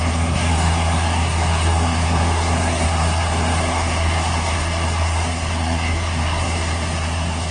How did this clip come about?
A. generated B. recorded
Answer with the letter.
A